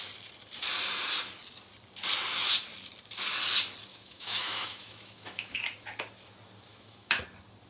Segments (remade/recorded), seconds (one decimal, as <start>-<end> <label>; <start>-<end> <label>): 0.0-3.9 recorded; 3.9-5.6 remade; 5.6-6.7 recorded; 6.7-7.2 remade; 7.2-7.7 recorded

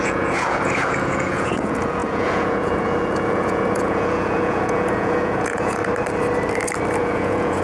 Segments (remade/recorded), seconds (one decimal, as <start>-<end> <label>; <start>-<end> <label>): 0.0-5.8 remade; 5.8-7.0 recorded; 7.0-7.6 remade

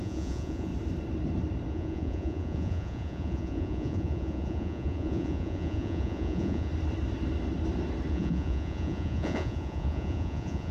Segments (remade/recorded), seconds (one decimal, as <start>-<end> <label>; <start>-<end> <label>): 0.0-0.7 remade; 0.7-1.7 recorded; 1.7-6.7 remade; 6.7-8.1 recorded; 8.1-10.7 remade

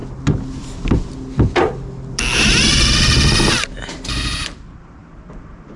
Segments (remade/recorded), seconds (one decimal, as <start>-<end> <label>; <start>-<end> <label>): 0.0-5.8 recorded

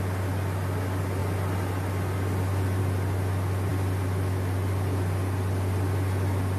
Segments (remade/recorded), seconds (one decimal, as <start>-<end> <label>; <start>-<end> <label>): 0.0-6.6 recorded

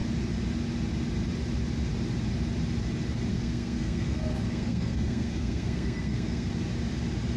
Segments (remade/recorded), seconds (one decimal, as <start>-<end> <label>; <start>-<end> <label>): 0.0-3.3 recorded; 3.3-6.5 remade; 6.5-7.4 recorded